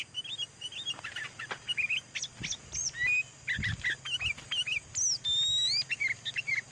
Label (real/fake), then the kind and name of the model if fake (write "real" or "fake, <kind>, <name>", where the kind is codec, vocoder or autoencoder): real